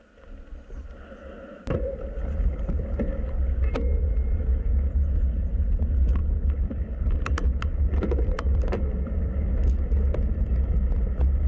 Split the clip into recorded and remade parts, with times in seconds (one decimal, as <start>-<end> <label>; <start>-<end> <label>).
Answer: 0.0-6.2 recorded; 6.2-8.9 remade; 8.9-11.5 recorded